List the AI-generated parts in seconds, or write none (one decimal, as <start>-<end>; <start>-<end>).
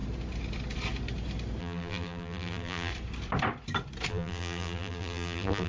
1.6-2.9; 4.1-5.7